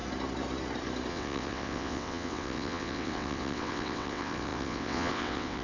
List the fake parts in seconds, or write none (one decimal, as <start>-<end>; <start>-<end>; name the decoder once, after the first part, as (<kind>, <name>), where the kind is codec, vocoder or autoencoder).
1.1-5.6 (vocoder, WaveNeXt)